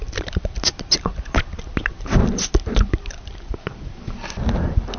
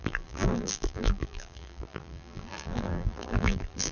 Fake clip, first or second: second